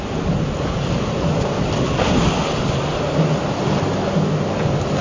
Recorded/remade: recorded